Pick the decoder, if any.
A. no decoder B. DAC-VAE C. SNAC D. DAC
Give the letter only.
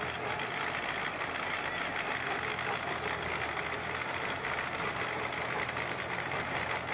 A